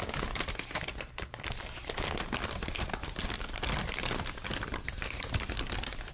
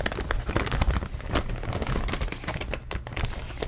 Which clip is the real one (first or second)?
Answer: second